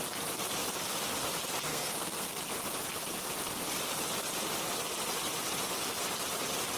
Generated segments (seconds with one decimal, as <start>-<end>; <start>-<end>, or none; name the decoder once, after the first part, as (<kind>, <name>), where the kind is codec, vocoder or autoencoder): 1.7-2.4 (codec, SNAC)